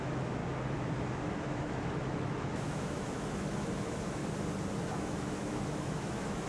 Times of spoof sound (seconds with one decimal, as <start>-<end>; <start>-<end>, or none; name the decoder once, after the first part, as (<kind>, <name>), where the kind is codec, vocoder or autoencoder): 0.0-0.4 (autoencoder, DAC-VAE); 1.0-4.2; 4.9-6.5